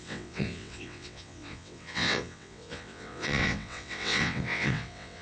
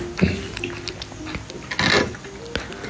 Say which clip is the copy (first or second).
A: first